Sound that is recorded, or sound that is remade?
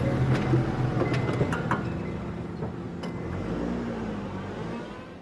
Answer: recorded